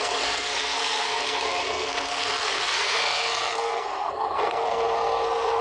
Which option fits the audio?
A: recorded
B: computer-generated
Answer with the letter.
B